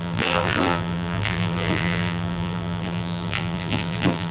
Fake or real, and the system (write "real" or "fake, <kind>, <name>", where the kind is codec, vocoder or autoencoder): fake, vocoder, BigVGAN v2